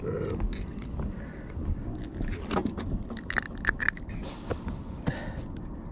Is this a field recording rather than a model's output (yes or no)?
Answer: yes